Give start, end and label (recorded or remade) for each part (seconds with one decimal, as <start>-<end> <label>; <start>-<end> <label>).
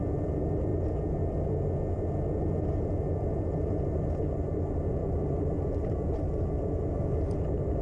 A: 0.0-0.7 remade; 0.7-2.4 recorded; 2.4-7.8 remade